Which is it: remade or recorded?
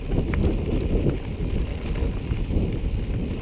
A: recorded